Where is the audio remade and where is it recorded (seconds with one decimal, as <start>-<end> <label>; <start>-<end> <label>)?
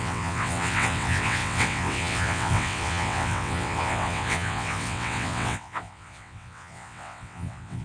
0.0-7.8 remade